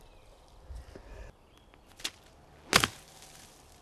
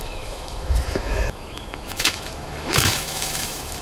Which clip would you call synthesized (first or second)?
second